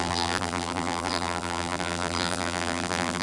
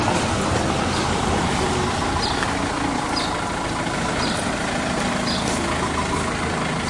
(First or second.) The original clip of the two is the second